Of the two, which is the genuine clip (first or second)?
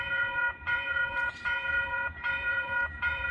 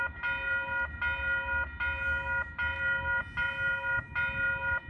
second